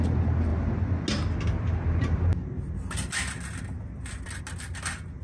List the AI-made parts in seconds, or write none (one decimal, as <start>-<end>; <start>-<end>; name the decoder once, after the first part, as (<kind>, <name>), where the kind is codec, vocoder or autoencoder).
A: none